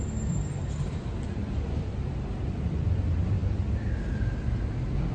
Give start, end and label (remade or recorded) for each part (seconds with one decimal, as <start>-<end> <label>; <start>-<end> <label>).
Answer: 0.0-5.1 recorded